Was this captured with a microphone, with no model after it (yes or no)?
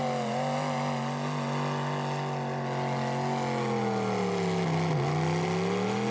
yes